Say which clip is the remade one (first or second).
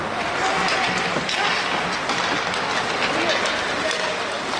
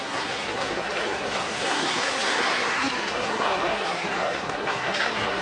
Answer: second